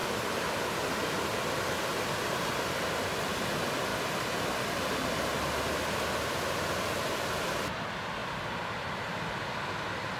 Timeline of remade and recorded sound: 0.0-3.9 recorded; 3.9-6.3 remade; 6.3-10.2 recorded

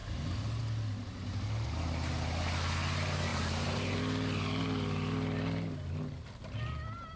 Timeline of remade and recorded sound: 0.0-3.3 recorded; 3.3-4.0 remade; 4.0-7.2 recorded

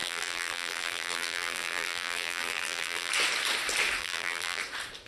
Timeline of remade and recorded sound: 0.0-3.1 remade; 3.1-4.0 recorded; 4.0-4.6 remade; 4.6-5.1 recorded

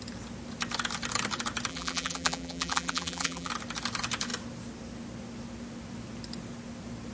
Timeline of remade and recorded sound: 0.0-1.7 recorded; 1.7-3.5 remade; 3.5-7.1 recorded

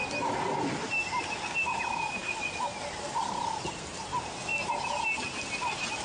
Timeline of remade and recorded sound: 0.0-6.0 recorded

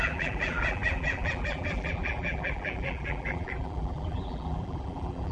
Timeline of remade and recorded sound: 0.0-5.3 remade